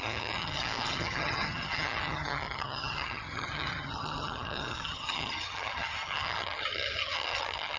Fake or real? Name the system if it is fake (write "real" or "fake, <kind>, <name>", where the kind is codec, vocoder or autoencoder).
fake, vocoder, HiFi-GAN